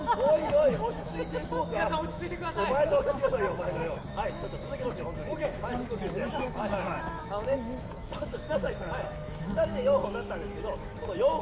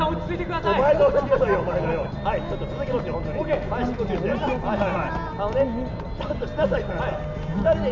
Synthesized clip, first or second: first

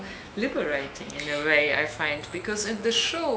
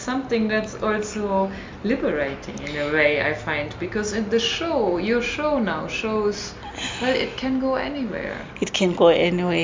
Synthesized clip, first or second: first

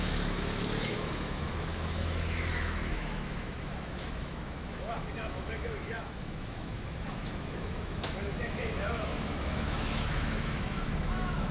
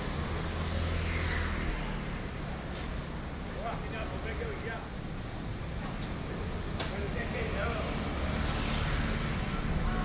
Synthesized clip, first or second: first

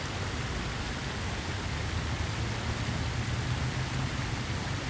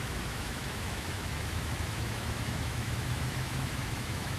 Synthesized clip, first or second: second